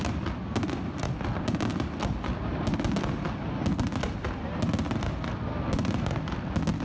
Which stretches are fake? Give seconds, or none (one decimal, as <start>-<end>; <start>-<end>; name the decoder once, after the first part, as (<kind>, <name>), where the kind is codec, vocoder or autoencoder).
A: none